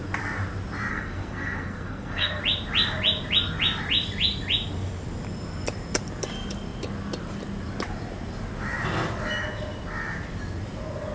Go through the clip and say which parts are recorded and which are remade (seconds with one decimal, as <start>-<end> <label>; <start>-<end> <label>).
0.0-0.9 recorded; 0.9-2.4 remade; 2.4-11.1 recorded

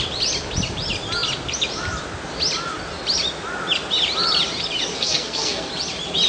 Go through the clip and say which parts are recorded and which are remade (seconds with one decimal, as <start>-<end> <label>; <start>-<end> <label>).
0.0-4.9 recorded; 4.9-5.7 remade; 5.7-6.3 recorded

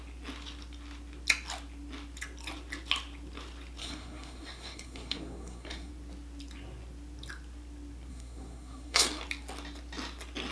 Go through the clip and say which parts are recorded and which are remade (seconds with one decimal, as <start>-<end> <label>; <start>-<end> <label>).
0.0-3.8 recorded; 3.8-5.9 remade; 5.9-8.1 recorded; 8.1-9.2 remade; 9.2-10.5 recorded

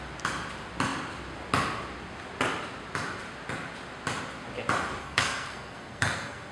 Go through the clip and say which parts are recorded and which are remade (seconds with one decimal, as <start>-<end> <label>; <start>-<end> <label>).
0.0-5.0 recorded; 5.0-6.5 remade

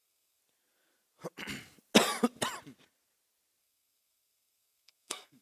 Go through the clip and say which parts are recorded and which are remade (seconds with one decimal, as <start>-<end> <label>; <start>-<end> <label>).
0.0-0.4 remade; 0.4-3.6 recorded; 3.6-5.4 remade

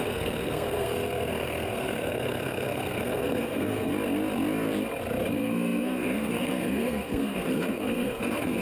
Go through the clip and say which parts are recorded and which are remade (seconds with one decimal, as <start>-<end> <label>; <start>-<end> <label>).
0.0-3.9 remade; 3.9-5.3 recorded; 5.3-8.6 remade

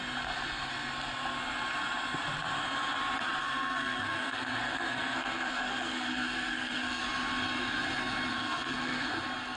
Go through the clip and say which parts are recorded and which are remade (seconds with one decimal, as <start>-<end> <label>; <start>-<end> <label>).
0.0-3.4 recorded; 3.4-7.0 remade; 7.0-8.3 recorded; 8.3-9.1 remade; 9.1-9.6 recorded